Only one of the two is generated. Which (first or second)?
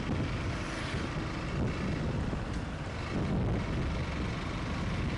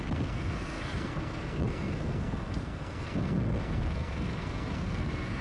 second